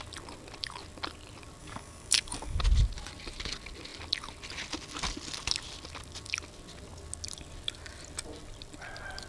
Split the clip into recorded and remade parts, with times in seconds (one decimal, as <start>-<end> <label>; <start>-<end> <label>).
0.0-1.6 recorded; 1.6-2.6 remade; 2.6-9.3 recorded